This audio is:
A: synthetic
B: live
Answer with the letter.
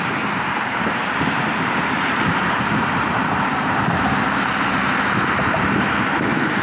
A